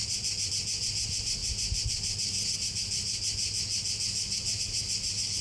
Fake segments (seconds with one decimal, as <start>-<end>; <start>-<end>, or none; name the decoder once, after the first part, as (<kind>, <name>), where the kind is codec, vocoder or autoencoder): none